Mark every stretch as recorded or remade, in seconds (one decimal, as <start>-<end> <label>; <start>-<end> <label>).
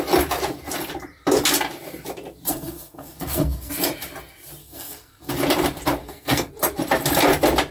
0.0-2.5 recorded; 2.5-3.7 remade; 3.7-4.6 recorded; 4.6-5.3 remade; 5.3-6.0 recorded; 6.0-6.5 remade; 6.5-7.7 recorded